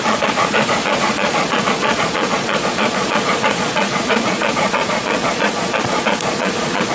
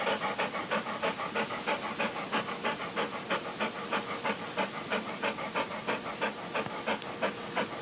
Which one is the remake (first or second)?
first